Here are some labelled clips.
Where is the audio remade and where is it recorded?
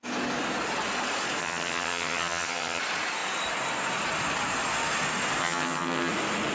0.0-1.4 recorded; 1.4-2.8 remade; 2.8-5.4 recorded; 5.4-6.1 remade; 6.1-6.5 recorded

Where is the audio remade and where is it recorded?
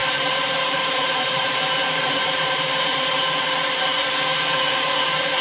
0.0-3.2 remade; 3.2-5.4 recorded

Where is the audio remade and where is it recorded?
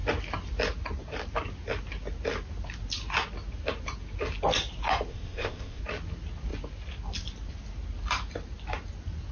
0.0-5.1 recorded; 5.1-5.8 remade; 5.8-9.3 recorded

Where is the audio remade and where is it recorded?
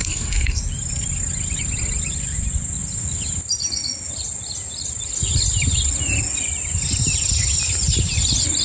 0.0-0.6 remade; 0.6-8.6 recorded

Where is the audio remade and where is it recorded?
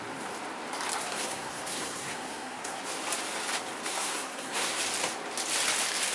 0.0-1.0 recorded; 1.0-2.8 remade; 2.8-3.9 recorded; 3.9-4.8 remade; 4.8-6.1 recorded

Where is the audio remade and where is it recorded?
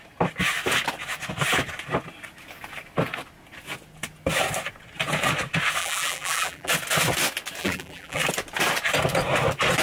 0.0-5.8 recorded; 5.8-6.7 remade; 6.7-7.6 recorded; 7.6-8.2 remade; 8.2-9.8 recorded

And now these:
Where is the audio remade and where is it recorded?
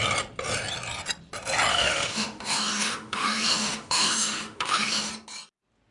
0.0-1.7 recorded; 1.7-5.1 remade; 5.1-5.9 recorded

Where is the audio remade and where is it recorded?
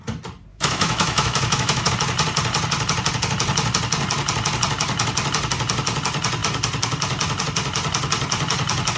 0.0-0.5 recorded; 0.5-1.9 remade; 1.9-9.0 recorded